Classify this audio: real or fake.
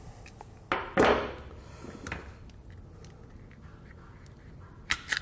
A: real